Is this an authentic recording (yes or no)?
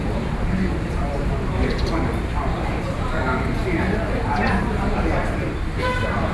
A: no